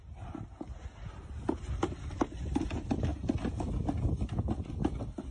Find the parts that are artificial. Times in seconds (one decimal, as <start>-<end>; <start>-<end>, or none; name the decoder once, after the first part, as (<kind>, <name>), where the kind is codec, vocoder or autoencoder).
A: none